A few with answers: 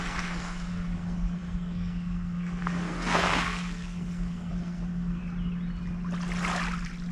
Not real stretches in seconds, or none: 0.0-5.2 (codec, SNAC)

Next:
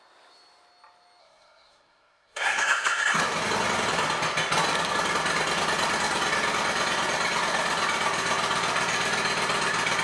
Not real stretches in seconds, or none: 1.2-3.2 (codec, SNAC)

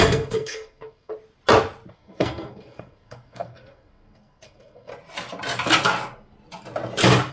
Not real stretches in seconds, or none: 0.0-1.1 (codec, SNAC); 1.9-4.9

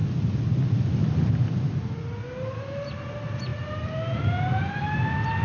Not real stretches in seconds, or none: none

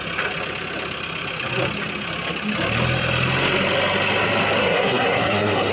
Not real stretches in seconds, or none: 4.6-5.7 (codec, SNAC)